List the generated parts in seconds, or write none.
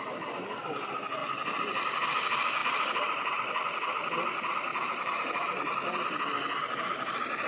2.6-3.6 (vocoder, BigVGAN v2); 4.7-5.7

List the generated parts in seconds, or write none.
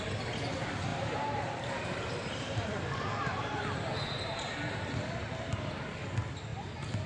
0.9-3.6 (vocoder, BigVGAN v2)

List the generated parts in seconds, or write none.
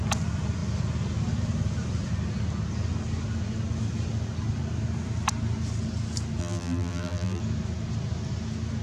6.4-7.4 (vocoder, BigVGAN v2)